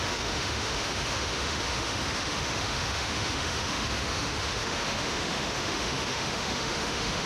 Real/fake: fake